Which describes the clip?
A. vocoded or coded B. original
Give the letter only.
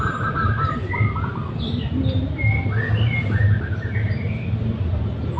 A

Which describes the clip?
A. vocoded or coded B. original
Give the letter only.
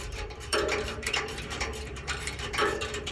A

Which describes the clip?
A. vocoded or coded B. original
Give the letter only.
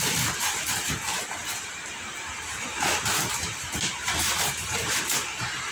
A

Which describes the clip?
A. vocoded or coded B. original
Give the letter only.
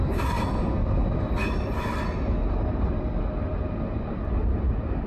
B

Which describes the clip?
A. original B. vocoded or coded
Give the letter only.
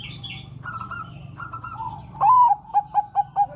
B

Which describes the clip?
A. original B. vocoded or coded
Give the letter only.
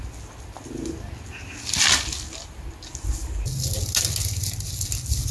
A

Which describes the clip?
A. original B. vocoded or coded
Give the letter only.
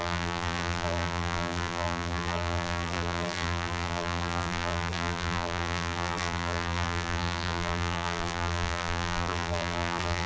B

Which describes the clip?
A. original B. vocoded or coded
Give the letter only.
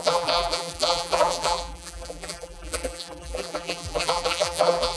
B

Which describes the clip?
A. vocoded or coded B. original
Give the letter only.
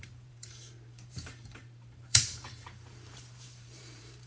A